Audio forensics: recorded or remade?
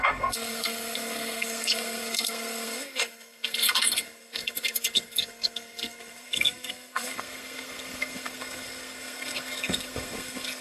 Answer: remade